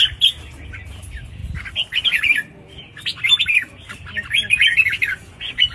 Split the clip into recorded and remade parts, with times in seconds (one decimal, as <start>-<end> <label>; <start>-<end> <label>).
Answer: 0.0-5.1 recorded; 5.1-5.7 remade